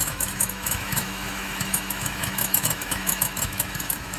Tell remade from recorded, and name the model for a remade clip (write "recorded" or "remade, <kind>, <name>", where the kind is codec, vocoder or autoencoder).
remade, autoencoder, DAC-VAE